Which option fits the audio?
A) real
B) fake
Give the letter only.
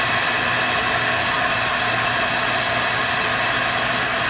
A